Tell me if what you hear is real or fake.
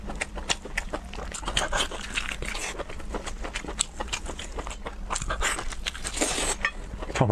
real